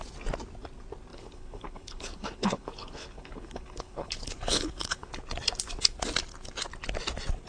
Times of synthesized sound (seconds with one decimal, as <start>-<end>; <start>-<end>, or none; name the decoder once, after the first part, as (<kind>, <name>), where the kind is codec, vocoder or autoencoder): 1.1-5.1 (codec, HILCodec)